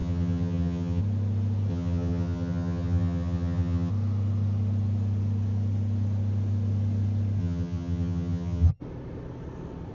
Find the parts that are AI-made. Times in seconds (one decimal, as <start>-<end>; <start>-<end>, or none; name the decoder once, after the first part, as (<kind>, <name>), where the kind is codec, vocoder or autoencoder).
0.0-1.0 (vocoder, HiFi-GAN); 1.7-3.9; 7.4-8.8